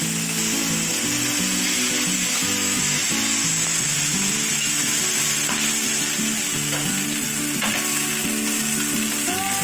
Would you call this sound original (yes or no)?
yes